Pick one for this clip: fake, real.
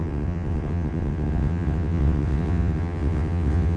fake